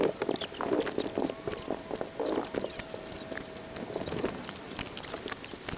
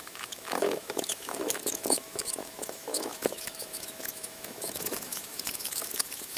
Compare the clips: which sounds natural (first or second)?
first